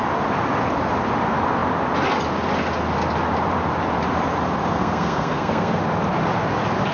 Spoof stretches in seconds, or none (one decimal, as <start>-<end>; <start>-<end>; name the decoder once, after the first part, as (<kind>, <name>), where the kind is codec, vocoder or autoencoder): 4.7-5.8 (codec, SNAC)

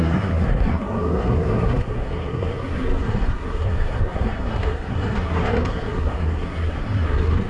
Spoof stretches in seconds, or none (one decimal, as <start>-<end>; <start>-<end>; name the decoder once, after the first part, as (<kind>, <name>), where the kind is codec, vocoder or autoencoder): 0.0-7.5 (codec, SNAC)

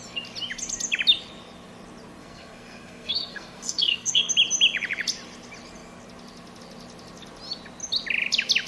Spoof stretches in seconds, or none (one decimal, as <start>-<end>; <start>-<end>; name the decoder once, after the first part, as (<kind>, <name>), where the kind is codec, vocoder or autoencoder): 2.2-4.3 (codec, SNAC)

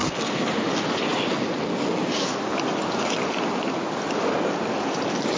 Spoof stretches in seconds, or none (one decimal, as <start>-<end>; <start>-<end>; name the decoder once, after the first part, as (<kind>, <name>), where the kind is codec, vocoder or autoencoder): 0.0-0.5 (codec, SNAC)

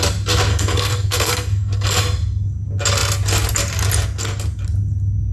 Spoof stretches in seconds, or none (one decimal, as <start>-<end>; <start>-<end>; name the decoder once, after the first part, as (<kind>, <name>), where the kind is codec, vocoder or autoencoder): 0.5-2.0 (codec, SNAC)

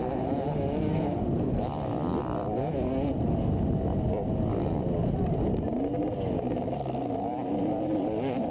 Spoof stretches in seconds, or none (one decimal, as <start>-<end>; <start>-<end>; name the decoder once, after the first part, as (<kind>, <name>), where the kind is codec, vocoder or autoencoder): 0.9-1.6 (codec, SNAC)